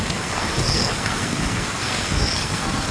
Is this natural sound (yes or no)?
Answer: no